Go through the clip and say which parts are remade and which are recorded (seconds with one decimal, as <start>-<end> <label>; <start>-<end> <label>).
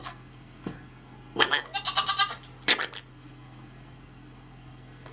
0.0-1.7 remade; 1.7-3.1 recorded; 3.1-5.1 remade